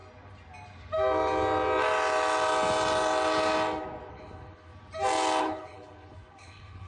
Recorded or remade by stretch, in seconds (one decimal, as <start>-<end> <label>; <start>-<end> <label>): 0.0-4.1 recorded; 4.1-4.7 remade; 4.7-5.4 recorded; 5.4-6.9 remade